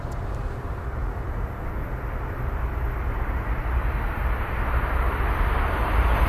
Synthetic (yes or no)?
no